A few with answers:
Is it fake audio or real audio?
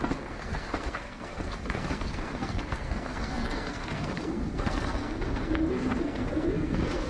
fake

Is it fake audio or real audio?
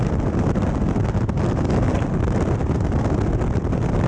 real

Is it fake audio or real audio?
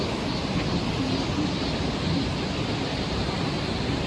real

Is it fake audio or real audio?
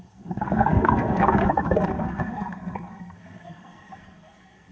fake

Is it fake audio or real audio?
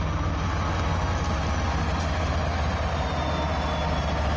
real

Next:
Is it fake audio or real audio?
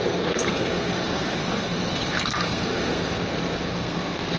fake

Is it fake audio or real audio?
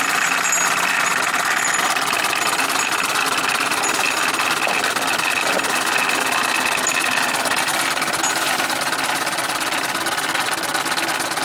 real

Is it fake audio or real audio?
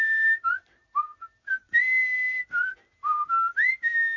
real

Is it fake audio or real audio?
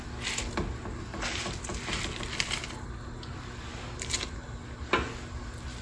real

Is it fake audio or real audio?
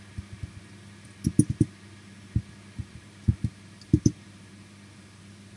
real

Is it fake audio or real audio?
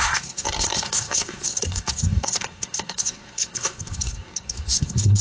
fake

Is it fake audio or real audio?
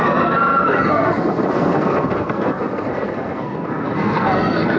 fake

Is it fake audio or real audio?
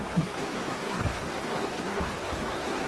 fake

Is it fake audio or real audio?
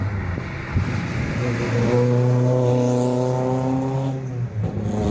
real